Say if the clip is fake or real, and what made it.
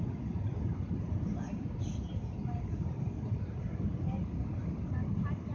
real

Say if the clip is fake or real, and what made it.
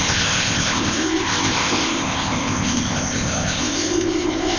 fake, codec, ZipCodec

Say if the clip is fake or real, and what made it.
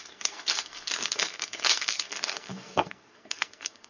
fake, codec, SNAC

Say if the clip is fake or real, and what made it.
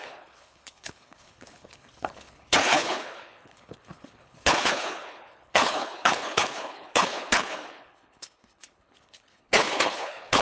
fake, codec, HILCodec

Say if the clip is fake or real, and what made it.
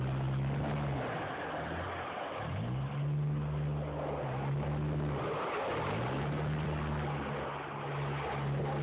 real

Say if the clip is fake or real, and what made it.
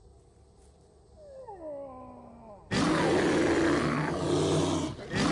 real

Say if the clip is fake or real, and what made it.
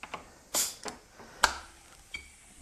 real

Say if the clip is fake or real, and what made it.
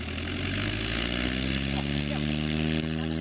real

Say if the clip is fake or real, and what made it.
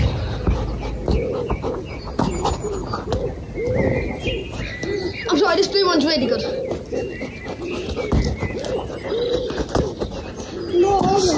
real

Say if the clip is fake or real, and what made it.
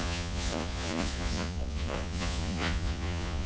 fake, vocoder, Vocos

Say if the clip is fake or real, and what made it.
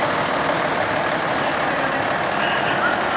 real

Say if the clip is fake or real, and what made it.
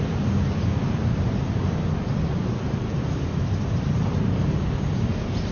fake, vocoder, BigVGAN v2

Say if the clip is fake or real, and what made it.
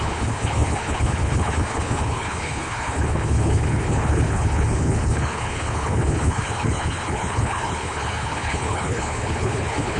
fake, codec, HILCodec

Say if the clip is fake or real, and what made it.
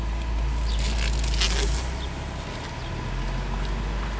real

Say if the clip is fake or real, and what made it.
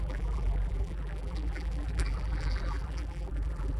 fake, vocoder, BigVGAN v2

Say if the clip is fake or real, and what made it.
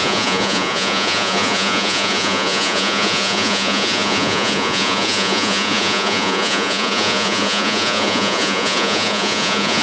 fake, vocoder, Vocos